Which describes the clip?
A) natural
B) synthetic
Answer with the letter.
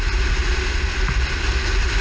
A